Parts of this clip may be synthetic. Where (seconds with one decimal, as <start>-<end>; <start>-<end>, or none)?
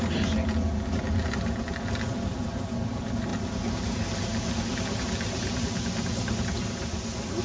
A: none